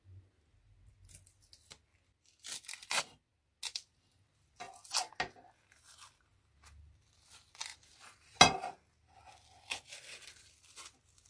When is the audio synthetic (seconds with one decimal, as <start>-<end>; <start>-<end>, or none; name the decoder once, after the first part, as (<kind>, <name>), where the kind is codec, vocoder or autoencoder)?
none